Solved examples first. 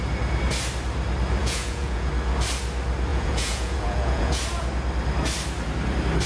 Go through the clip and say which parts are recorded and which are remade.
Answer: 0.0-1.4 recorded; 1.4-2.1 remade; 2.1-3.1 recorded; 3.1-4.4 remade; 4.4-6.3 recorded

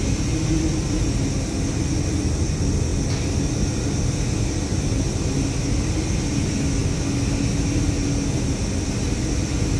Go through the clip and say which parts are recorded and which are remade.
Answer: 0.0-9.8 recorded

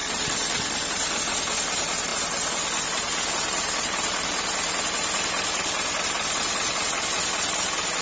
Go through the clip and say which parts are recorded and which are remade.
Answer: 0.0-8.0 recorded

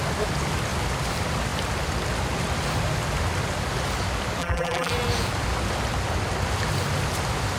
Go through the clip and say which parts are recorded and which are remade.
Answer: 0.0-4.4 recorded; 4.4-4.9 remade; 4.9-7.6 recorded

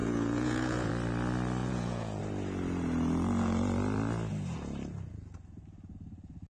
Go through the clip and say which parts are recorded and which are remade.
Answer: 0.0-0.9 remade; 0.9-1.6 recorded; 1.6-2.2 remade; 2.2-6.5 recorded

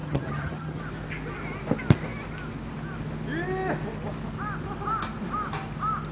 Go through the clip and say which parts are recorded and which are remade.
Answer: 0.0-0.8 remade; 0.8-6.1 recorded

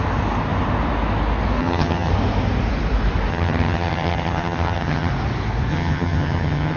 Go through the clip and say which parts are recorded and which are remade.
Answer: 0.0-1.6 recorded; 1.6-2.1 remade; 2.1-3.3 recorded; 3.3-5.1 remade; 5.1-5.7 recorded; 5.7-6.8 remade

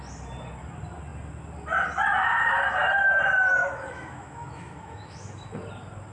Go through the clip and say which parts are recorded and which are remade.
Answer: 0.0-3.6 recorded; 3.6-5.5 remade; 5.5-6.1 recorded